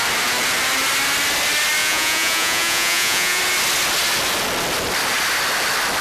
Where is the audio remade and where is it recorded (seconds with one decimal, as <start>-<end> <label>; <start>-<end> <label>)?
0.0-1.8 recorded; 1.8-3.4 remade; 3.4-6.0 recorded